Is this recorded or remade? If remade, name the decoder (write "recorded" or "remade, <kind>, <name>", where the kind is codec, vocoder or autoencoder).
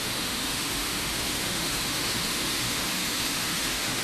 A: remade, autoencoder, DAC-VAE